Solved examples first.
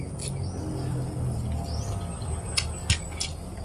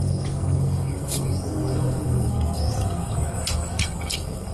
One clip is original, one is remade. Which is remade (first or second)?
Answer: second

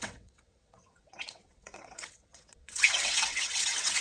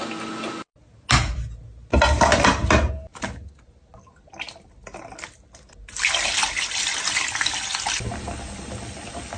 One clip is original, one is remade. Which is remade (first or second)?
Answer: first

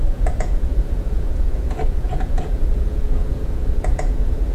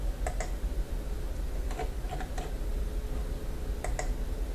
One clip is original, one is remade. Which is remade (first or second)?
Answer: first